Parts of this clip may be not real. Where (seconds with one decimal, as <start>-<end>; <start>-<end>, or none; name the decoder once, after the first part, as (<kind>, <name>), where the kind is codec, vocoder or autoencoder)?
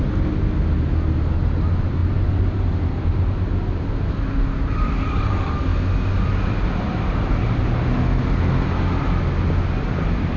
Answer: none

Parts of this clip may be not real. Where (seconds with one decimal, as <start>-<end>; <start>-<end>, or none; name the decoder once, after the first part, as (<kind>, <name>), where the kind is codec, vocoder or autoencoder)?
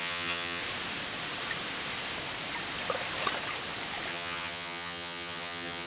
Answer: 0.0-0.6 (vocoder, HiFi-GAN); 4.1-5.9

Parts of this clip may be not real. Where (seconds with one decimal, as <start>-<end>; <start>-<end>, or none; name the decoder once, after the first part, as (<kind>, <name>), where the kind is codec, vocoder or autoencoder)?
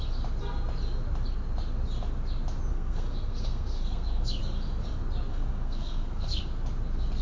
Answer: 2.7-4.4 (codec, SNAC); 5.3-6.4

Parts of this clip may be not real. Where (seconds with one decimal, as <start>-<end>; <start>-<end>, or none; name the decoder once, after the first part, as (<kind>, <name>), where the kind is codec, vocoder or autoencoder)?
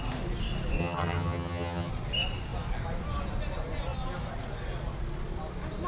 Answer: 0.8-1.9 (vocoder, HiFi-GAN)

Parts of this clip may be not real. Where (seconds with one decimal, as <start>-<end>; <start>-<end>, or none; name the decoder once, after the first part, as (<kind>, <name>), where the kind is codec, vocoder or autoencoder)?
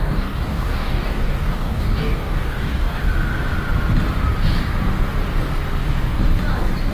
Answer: 0.0-3.0 (codec, DAC)